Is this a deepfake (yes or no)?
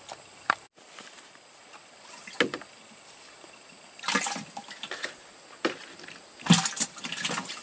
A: no